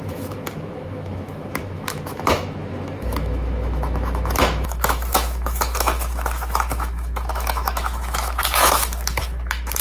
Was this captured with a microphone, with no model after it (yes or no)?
no